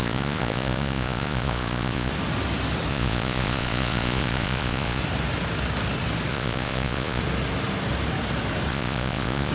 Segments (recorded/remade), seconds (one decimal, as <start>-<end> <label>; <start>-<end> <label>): 0.0-2.1 remade; 2.1-2.9 recorded; 2.9-5.0 remade; 5.0-6.3 recorded; 6.3-7.2 remade; 7.2-8.7 recorded; 8.7-9.5 remade